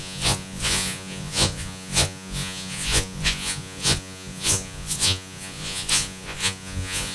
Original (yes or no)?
no